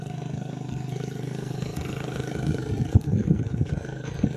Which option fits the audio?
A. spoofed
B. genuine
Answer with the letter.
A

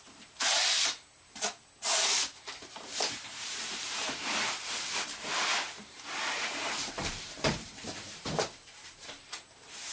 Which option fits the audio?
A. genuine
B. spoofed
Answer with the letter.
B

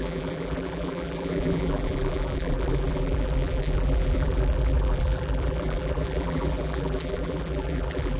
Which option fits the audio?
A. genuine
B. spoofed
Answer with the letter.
B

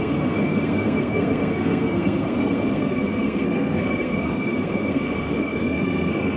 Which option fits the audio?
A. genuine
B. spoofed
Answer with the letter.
B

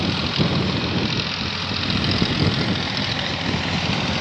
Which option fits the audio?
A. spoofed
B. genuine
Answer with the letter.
B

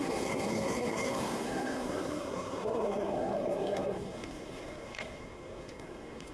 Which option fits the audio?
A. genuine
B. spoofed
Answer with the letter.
B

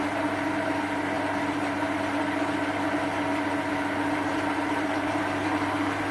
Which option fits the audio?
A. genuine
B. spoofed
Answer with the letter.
A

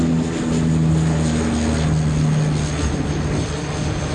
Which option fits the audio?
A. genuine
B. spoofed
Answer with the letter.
A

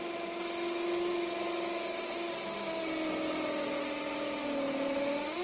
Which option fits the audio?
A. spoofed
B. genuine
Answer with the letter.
B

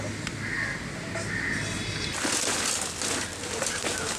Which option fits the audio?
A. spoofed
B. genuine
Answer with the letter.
B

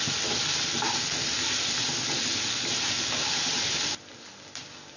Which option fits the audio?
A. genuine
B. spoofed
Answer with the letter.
A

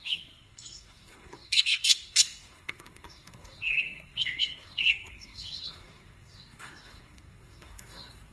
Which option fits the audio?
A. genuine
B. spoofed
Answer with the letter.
B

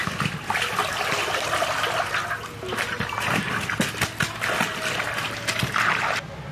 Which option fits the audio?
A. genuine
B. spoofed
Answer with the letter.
A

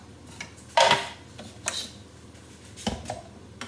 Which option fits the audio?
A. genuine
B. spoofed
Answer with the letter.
A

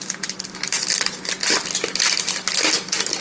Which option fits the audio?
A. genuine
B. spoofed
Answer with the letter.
A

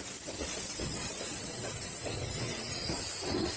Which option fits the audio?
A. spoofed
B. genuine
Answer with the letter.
A